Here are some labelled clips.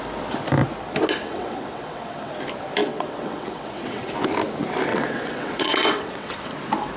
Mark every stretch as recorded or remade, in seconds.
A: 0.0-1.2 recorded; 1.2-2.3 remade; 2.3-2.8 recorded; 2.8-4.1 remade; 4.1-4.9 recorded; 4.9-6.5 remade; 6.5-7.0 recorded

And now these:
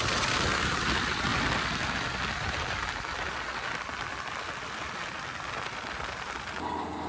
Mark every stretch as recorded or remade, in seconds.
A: 0.0-7.1 recorded

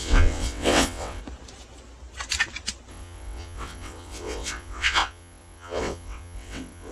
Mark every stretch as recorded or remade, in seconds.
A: 0.0-1.2 remade; 1.2-2.9 recorded; 2.9-6.9 remade

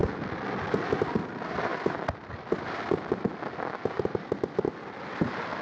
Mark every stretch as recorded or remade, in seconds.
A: 0.0-5.6 recorded

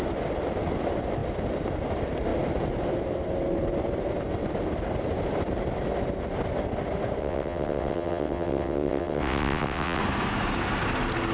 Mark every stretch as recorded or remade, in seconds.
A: 0.0-7.2 recorded; 7.2-10.0 remade; 10.0-11.3 recorded

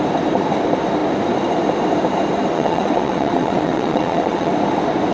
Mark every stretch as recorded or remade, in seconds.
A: 0.0-2.5 recorded; 2.5-4.5 remade; 4.5-5.1 recorded